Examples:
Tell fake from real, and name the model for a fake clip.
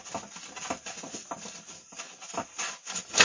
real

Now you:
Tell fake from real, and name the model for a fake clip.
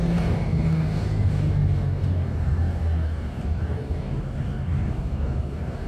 fake, codec, DAC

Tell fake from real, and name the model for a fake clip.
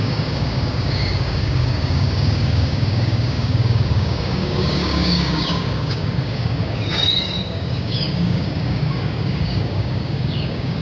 fake, codec, DAC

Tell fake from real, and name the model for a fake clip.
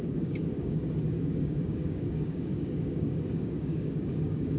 fake, codec, DAC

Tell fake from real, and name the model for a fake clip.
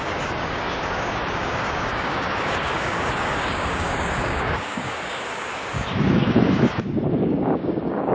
fake, codec, DAC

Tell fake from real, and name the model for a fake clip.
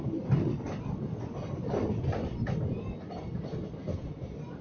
real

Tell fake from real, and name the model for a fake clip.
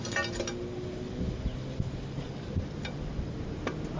real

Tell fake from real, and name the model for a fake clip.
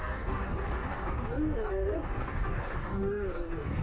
fake, codec, DAC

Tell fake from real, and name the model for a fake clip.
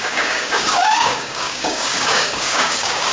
fake, codec, DAC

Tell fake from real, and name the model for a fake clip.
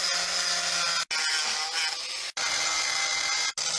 real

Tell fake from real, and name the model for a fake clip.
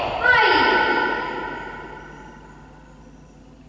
real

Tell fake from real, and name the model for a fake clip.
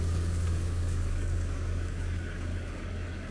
fake, codec, DAC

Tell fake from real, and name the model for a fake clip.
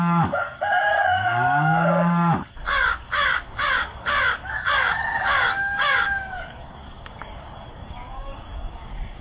fake, codec, DAC